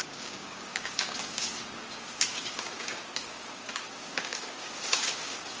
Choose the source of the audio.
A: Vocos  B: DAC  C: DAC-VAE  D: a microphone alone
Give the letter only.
B